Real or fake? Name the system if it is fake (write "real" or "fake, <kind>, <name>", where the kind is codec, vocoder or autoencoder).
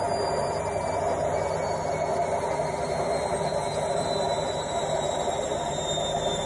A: real